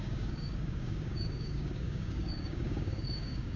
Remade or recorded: remade